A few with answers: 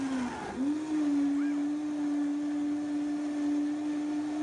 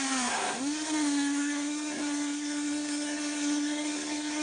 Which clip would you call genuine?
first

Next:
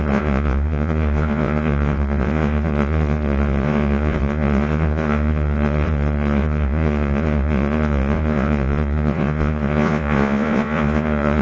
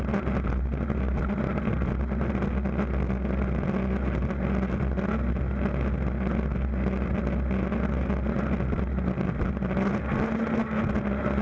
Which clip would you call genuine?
second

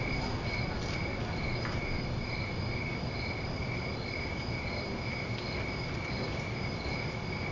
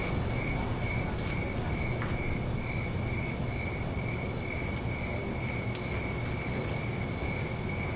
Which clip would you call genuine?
second